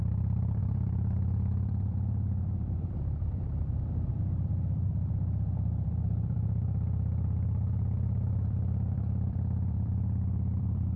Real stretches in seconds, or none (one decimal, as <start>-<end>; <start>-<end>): none